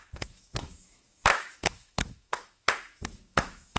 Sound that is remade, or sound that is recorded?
remade